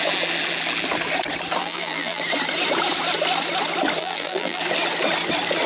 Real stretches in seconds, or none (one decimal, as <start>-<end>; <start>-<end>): 0.0-1.6; 2.2-4.0; 4.6-5.7